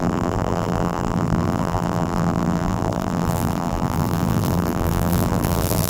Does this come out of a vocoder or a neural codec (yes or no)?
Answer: yes